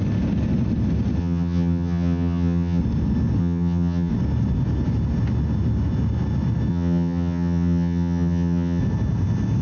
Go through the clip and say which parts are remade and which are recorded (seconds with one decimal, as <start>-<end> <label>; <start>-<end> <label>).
0.0-1.2 recorded; 1.2-2.8 remade; 2.8-3.4 recorded; 3.4-4.1 remade; 4.1-6.7 recorded; 6.7-8.8 remade; 8.8-9.6 recorded